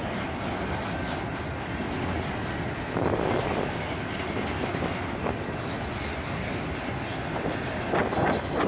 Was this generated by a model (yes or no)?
no